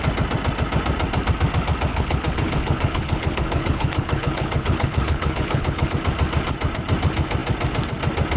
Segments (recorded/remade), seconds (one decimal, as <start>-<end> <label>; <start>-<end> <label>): 0.0-1.9 recorded; 1.9-5.9 remade; 5.9-8.4 recorded